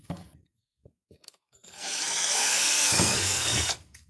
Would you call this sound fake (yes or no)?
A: yes